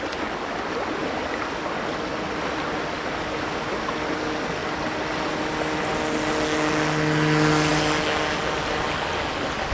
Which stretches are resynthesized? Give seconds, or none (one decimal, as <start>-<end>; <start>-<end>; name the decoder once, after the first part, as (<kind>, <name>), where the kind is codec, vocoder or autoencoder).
none